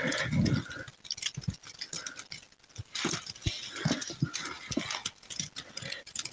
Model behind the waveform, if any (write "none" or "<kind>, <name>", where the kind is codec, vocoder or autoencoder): none